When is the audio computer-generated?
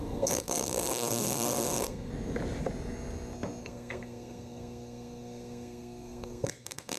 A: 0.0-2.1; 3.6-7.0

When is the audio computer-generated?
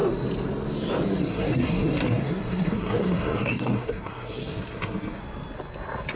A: 1.2-5.2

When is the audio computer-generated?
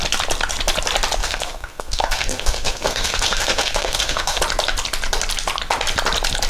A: 1.2-4.4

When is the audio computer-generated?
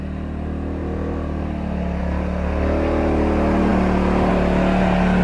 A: none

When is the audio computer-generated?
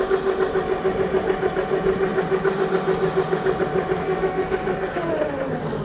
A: 4.0-5.1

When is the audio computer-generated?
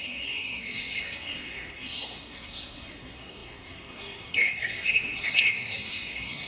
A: 0.0-6.5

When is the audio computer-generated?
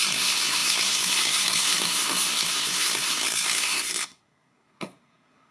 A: 0.0-5.5